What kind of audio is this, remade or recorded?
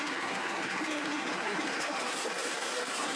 remade